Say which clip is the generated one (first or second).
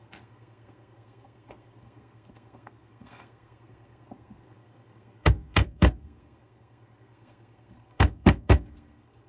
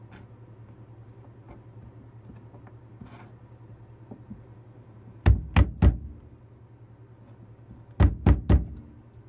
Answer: first